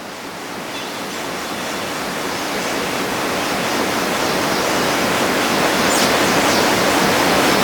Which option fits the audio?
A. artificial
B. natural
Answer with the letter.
B